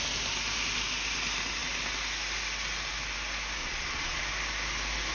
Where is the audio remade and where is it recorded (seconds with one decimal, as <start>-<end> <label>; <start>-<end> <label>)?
0.0-3.6 recorded; 3.6-4.2 remade; 4.2-5.1 recorded